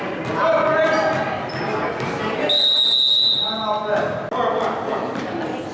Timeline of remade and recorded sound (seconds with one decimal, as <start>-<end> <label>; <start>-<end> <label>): 0.0-5.7 recorded